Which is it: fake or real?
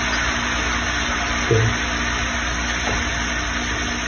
real